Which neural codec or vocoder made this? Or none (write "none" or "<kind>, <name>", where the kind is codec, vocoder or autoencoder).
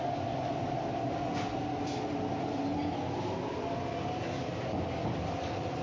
none